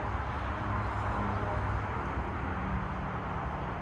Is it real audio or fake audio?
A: real